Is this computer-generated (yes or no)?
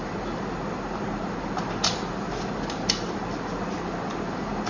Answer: no